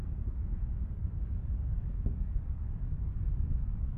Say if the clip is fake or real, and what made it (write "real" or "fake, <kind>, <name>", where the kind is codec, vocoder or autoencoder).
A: fake, codec, DAC